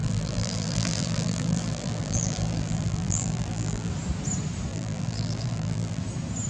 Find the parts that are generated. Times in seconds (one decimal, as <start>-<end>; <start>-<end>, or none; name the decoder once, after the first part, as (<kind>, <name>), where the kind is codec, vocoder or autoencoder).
0.0-3.9 (vocoder, BigVGAN v2); 4.7-6.0